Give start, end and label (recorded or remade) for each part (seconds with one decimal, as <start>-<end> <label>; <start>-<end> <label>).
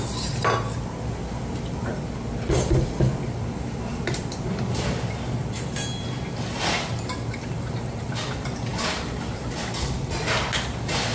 0.0-3.9 recorded; 3.9-6.2 remade; 6.2-8.7 recorded; 8.7-9.5 remade; 9.5-11.1 recorded